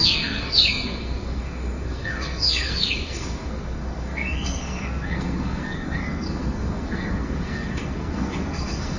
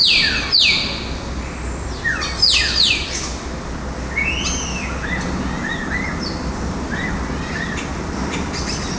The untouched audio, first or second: second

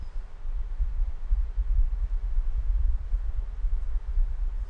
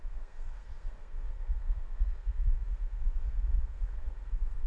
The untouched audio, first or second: first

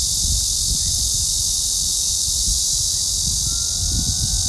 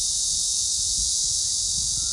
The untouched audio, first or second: first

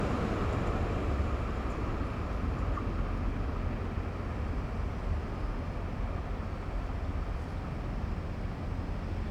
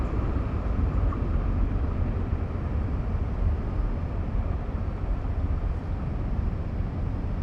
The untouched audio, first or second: first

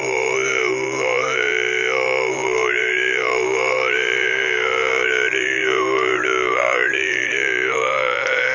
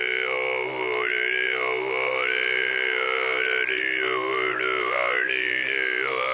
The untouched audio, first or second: second